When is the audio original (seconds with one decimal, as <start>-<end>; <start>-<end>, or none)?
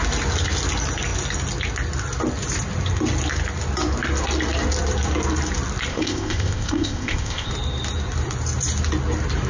0.0-5.9; 7.5-9.5